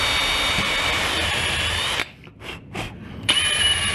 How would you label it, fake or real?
fake